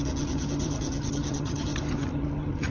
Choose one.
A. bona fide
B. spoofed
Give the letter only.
B